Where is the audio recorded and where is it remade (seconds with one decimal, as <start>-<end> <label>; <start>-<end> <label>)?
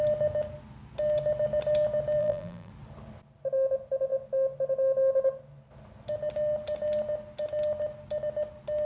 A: 0.0-2.2 recorded; 2.2-2.7 remade; 2.7-8.9 recorded